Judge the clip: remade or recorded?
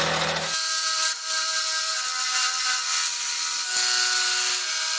recorded